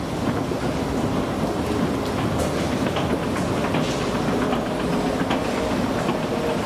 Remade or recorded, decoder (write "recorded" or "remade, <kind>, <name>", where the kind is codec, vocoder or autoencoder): recorded